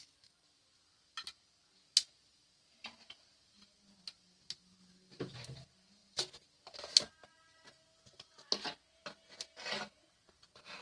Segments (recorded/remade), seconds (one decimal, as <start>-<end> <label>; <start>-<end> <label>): 0.0-10.8 recorded